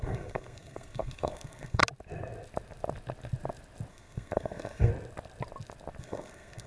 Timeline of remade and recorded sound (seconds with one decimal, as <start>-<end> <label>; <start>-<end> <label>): 0.0-1.8 remade; 1.8-3.9 recorded; 3.9-4.9 remade; 4.9-6.0 recorded; 6.0-6.7 remade